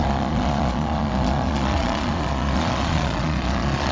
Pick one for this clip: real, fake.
fake